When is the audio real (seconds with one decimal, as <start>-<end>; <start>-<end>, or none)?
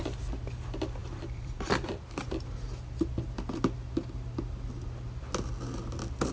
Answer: 0.0-1.0; 1.8-6.3